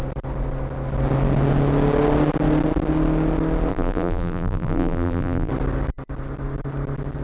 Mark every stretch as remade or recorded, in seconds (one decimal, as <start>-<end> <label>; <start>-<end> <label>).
0.0-3.7 recorded; 3.7-5.5 remade; 5.5-7.2 recorded